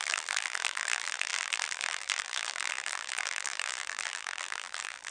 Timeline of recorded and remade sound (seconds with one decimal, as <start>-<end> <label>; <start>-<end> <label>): 0.0-5.1 remade